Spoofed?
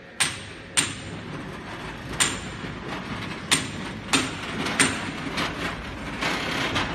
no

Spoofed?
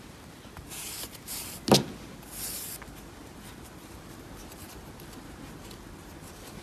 no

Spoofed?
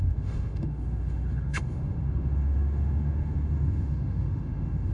yes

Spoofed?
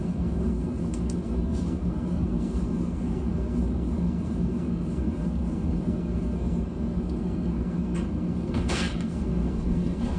yes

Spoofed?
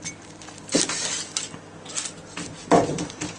no